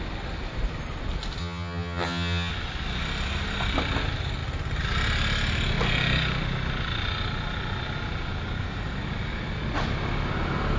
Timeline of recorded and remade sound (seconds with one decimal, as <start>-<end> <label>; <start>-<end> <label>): 0.0-1.4 recorded; 1.4-2.5 remade; 2.5-10.8 recorded

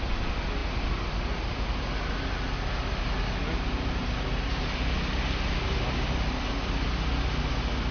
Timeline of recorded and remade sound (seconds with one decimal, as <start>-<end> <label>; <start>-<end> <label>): 0.0-7.9 recorded